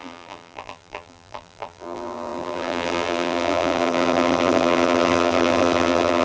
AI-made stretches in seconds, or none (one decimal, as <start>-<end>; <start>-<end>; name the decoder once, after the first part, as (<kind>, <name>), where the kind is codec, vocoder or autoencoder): 0.0-6.2 (vocoder, BigVGAN v2)